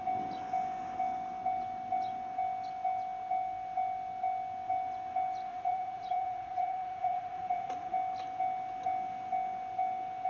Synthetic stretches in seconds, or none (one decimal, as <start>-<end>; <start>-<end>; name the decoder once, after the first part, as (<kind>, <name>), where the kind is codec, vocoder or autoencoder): 5.5-7.9 (vocoder, Vocos)